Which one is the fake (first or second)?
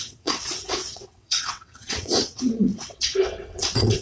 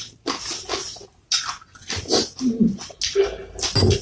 first